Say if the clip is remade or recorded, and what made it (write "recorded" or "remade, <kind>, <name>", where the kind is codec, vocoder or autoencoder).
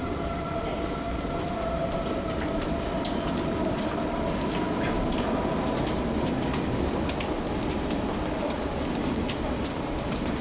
recorded